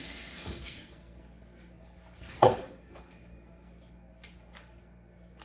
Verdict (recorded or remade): remade